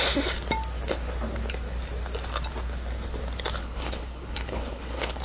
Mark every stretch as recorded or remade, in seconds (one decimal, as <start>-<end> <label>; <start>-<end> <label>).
0.0-3.6 recorded; 3.6-5.2 remade